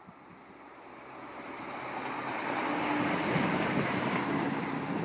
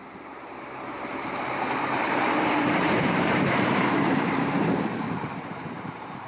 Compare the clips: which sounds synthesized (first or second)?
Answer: second